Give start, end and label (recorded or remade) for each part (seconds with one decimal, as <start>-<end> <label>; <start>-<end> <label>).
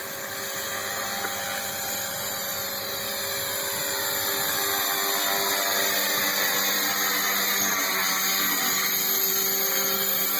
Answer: 0.0-10.4 recorded